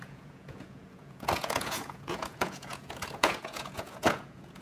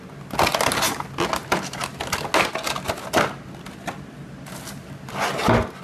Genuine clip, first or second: second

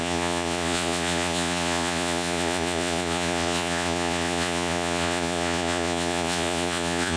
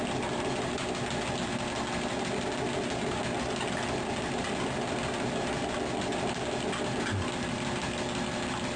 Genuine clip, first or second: second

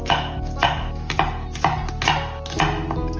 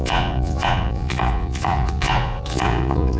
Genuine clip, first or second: first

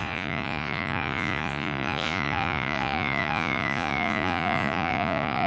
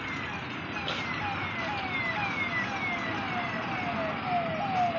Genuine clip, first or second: second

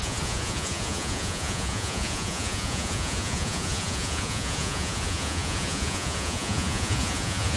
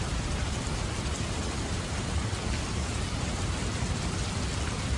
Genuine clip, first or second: second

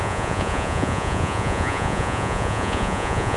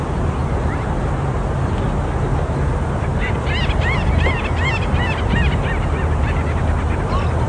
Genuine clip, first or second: second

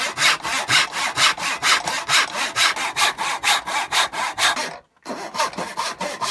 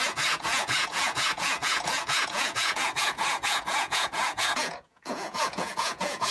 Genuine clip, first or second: first